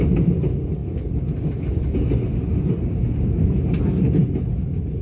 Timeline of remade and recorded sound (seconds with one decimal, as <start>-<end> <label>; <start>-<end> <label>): 0.0-5.0 recorded

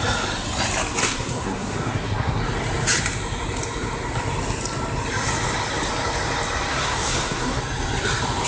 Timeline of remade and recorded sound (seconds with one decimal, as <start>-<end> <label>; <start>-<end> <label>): 0.0-1.0 recorded; 1.0-2.4 remade; 2.4-6.7 recorded; 6.7-7.6 remade; 7.6-8.5 recorded

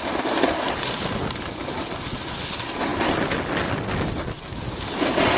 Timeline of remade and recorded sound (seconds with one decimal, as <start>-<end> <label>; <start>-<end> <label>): 0.0-5.4 recorded

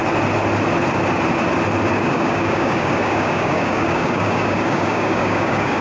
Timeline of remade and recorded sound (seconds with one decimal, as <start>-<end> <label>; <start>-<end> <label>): 0.0-1.9 recorded; 1.9-5.8 remade

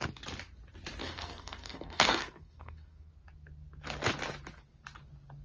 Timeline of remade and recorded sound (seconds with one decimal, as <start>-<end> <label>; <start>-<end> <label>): 0.0-1.0 recorded; 1.0-3.1 remade; 3.1-5.4 recorded

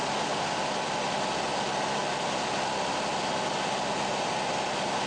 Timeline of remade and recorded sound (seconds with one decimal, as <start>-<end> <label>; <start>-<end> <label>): 0.0-5.1 recorded

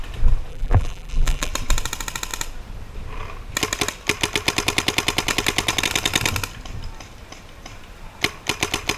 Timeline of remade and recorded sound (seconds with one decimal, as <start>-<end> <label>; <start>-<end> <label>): 0.0-0.5 recorded; 0.5-1.5 remade; 1.5-9.0 recorded